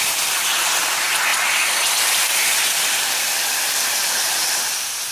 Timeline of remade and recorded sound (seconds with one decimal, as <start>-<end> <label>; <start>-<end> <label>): 0.0-5.1 recorded